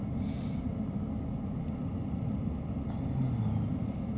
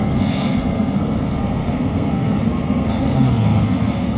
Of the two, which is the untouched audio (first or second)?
first